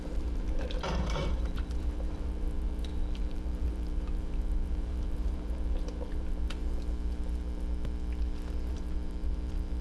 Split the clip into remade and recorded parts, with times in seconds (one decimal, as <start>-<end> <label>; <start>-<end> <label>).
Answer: 0.0-6.6 remade; 6.6-8.7 recorded; 8.7-9.8 remade